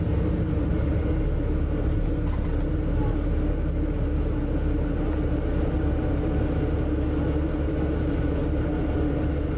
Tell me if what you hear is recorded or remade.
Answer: recorded